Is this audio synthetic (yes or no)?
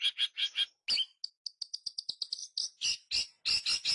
no